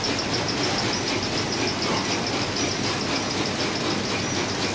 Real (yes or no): yes